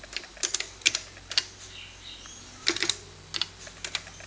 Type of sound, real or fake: real